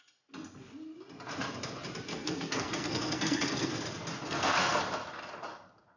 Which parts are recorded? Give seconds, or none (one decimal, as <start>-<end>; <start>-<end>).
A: 0.0-2.1; 3.7-4.2; 4.8-6.0